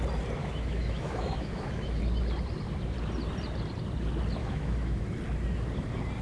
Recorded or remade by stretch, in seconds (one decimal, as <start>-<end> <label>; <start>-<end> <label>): 0.0-0.4 recorded; 0.4-2.0 remade; 2.0-4.4 recorded; 4.4-5.0 remade; 5.0-6.2 recorded